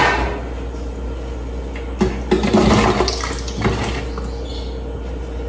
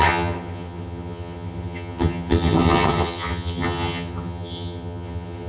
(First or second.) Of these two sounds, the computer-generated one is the second